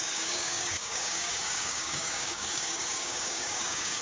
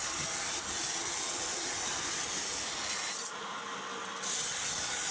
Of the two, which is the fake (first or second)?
first